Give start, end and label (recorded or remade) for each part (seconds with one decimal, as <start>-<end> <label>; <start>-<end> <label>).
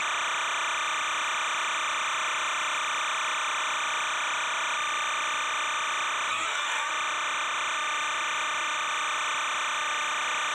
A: 0.0-6.3 recorded; 6.3-6.9 remade; 6.9-10.5 recorded